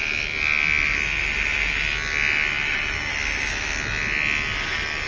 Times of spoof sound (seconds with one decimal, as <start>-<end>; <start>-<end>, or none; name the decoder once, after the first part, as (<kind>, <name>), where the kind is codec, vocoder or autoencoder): none